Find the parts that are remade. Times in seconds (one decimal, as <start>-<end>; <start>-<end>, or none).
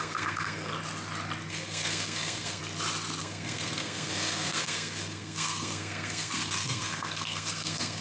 0.0-0.7; 1.5-2.6; 3.2-8.0